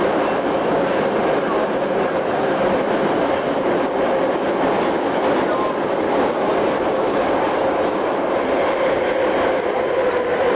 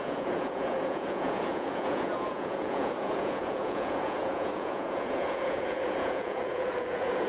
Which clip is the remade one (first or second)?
second